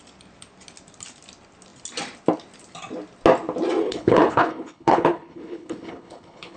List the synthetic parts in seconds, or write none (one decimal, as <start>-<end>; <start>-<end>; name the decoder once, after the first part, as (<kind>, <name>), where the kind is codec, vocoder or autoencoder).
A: 3.8-6.6 (codec, HILCodec)